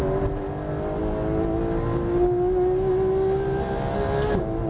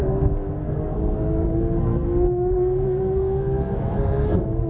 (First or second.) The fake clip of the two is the second